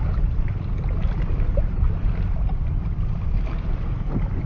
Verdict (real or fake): real